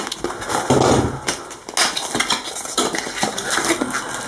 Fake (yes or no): no